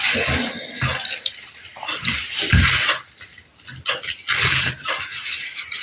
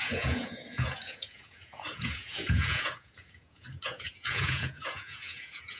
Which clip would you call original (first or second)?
first